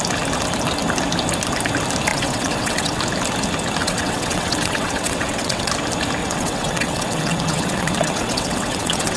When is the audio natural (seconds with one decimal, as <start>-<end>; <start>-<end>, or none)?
0.0-2.1; 3.0-3.8; 5.7-6.2